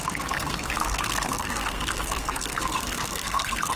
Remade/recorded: remade